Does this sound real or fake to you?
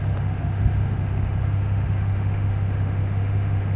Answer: fake